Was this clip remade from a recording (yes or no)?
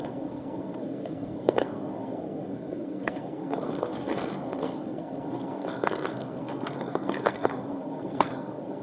yes